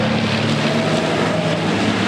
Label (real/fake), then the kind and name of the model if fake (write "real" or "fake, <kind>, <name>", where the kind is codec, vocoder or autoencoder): real